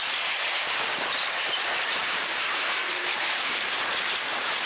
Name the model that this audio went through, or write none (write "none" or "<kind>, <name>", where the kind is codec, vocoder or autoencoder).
vocoder, BigVGAN v2